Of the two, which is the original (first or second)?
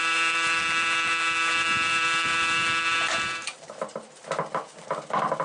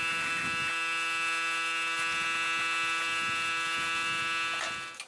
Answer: second